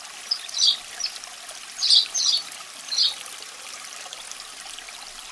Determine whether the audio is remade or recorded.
recorded